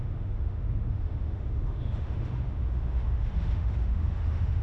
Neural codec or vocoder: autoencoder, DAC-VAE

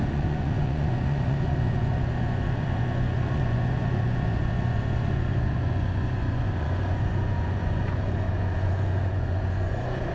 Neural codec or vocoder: vocoder, Vocos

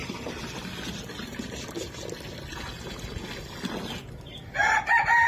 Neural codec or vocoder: none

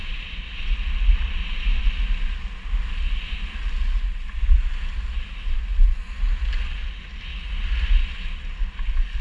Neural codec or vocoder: none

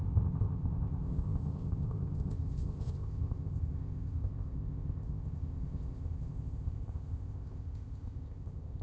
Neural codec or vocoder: codec, ZipCodec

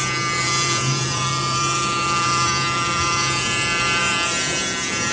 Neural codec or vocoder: vocoder, BigVGAN v2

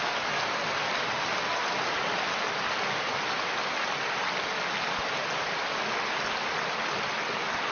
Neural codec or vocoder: none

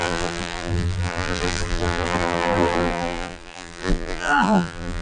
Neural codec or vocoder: vocoder, BigVGAN v2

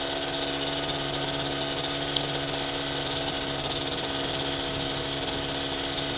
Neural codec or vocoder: none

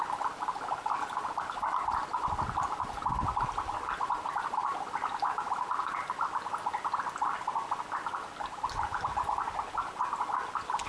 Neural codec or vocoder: none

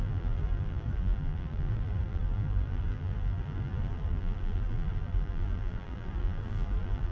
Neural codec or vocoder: vocoder, BigVGAN v2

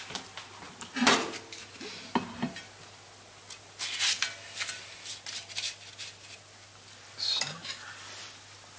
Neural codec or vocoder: none